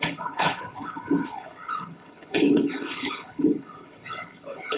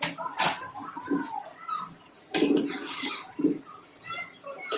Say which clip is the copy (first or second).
first